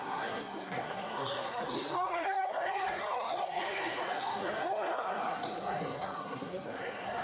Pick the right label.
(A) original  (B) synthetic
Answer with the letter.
B